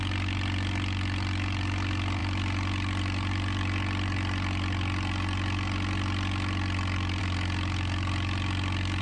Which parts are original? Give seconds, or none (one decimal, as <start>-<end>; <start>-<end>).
0.0-9.0